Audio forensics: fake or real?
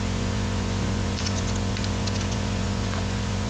fake